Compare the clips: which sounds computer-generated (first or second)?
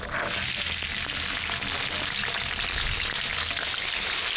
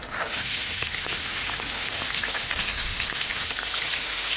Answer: second